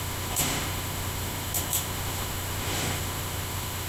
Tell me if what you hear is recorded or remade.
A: remade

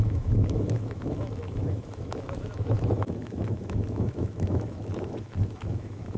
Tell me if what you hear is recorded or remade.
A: remade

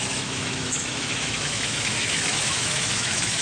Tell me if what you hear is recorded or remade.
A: remade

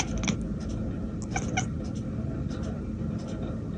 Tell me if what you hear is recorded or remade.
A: recorded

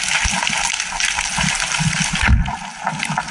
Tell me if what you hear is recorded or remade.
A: recorded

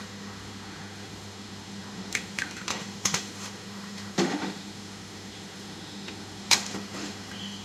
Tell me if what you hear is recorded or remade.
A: remade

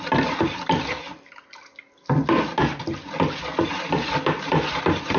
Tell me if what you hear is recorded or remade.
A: recorded